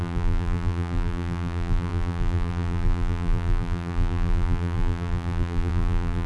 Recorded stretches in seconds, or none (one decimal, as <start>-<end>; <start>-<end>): none